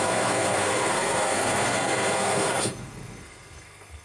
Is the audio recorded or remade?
remade